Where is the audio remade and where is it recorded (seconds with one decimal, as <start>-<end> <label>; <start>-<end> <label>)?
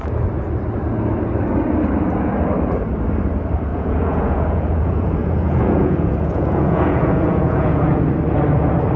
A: 0.0-3.7 recorded; 3.7-8.0 remade; 8.0-9.0 recorded